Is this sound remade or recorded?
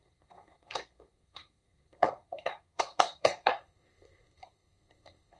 remade